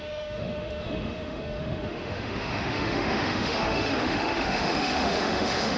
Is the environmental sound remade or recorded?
remade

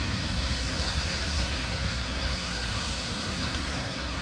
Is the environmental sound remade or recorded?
remade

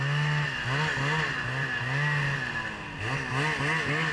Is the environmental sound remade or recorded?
recorded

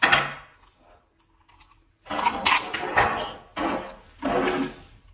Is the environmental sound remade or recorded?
recorded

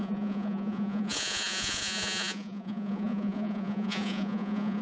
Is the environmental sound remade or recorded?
remade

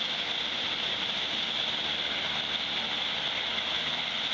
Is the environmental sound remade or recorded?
recorded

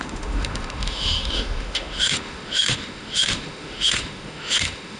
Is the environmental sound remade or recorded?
remade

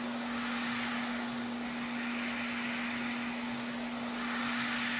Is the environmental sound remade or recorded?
recorded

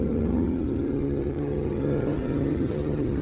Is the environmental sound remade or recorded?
remade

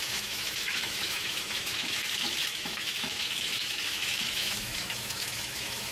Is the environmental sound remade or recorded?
remade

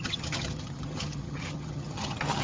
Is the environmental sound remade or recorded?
remade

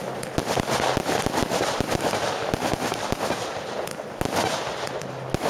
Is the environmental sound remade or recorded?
recorded